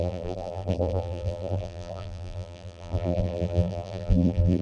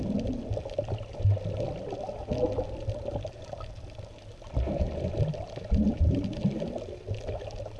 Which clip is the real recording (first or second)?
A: second